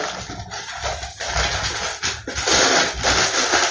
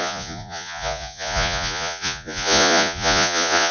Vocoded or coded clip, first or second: second